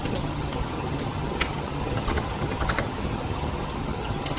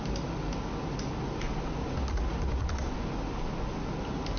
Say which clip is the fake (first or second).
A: first